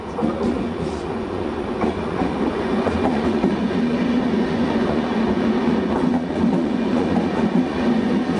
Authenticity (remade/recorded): remade